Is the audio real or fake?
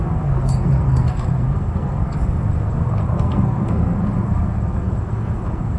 fake